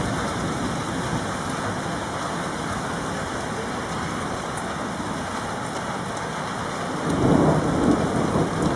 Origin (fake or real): real